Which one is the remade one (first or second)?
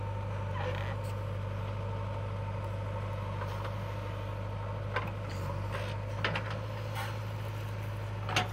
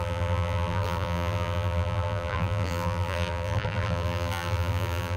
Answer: second